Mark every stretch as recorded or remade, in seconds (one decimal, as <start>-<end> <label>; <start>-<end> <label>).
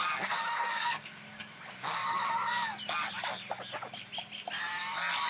0.0-0.4 recorded; 0.4-1.6 remade; 1.6-5.3 recorded